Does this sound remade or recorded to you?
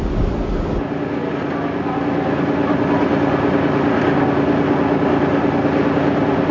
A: recorded